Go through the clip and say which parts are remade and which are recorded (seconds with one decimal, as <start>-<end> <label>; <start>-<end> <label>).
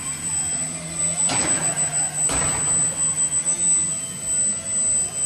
0.0-1.0 remade; 1.0-5.3 recorded